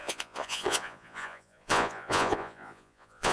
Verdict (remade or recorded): remade